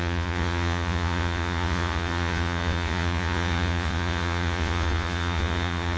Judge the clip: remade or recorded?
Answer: remade